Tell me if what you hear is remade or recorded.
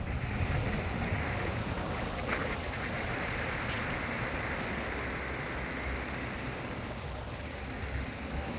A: recorded